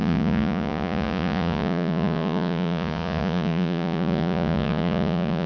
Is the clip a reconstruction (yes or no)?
yes